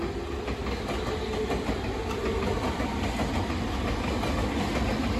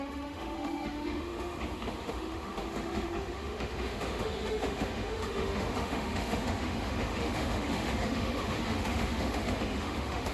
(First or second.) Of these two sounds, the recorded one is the first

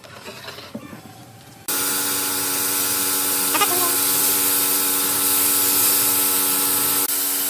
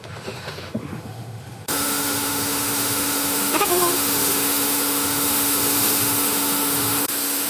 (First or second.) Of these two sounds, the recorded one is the first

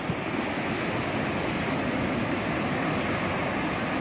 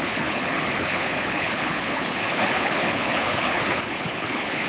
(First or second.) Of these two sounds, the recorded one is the first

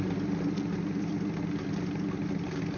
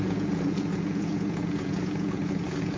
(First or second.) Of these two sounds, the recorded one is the first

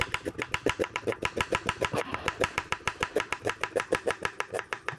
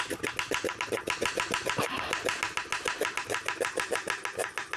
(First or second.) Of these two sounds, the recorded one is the second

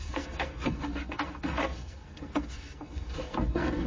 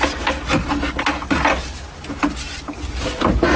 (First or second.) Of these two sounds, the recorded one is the second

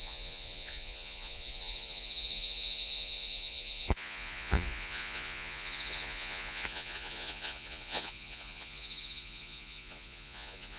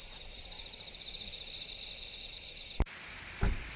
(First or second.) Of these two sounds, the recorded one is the second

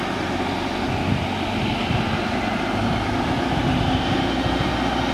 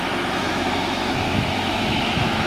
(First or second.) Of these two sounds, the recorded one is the first